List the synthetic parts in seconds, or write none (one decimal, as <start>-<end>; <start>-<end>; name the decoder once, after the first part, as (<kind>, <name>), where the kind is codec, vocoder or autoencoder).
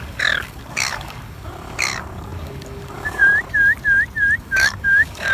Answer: 0.0-3.2 (codec, DAC); 4.4-5.3